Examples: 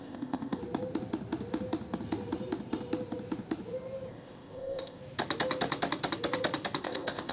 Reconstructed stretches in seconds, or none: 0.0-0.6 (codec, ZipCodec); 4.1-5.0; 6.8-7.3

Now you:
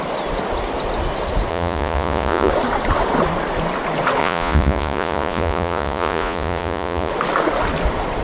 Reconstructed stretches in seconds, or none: 1.5-2.5 (vocoder, Vocos); 4.2-7.1

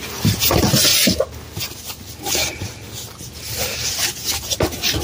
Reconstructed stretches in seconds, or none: 0.9-3.9 (vocoder, BigVGAN v2)

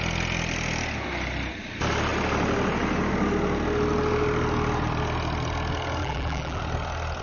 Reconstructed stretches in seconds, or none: 6.0-6.6 (vocoder, BigVGAN v2)